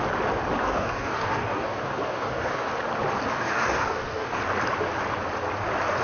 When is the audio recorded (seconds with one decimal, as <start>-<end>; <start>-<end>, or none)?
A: 0.0-0.6; 2.7-3.3; 4.4-6.0